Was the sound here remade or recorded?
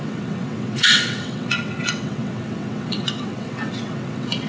remade